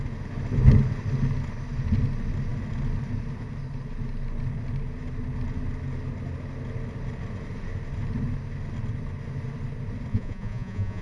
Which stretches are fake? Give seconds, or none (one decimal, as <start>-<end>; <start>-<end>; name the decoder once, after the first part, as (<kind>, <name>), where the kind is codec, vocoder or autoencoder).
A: 10.1-11.0 (vocoder, Vocos)